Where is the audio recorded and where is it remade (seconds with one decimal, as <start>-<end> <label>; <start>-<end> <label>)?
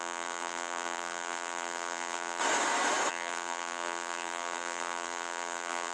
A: 0.0-2.4 remade; 2.4-3.1 recorded; 3.1-5.9 remade